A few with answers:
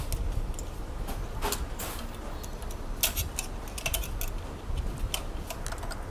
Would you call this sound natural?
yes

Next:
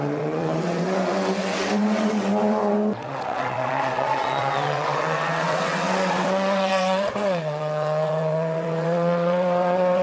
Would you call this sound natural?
no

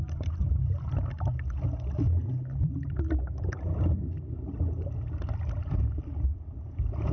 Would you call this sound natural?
yes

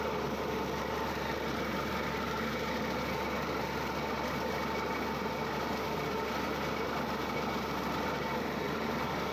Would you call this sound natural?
yes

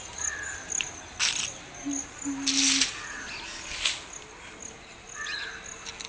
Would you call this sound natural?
yes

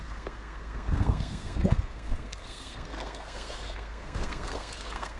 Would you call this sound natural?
no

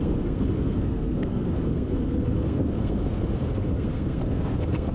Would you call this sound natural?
no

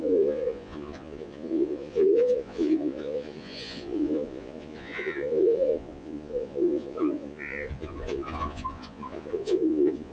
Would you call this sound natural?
no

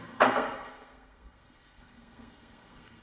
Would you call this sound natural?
no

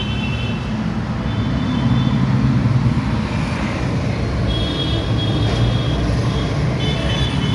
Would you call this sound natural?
yes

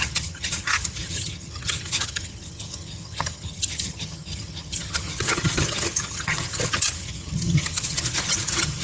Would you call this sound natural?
no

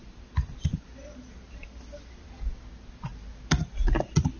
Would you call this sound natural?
yes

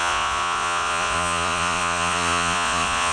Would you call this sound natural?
no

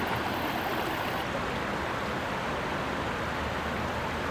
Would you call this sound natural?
yes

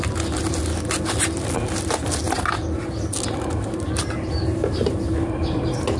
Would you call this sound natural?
yes